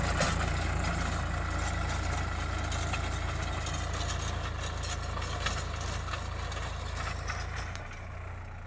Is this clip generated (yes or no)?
no